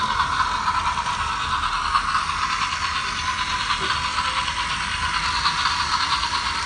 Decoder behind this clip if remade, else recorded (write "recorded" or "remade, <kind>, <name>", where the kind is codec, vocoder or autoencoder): recorded